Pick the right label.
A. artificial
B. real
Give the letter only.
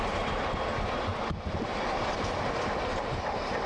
B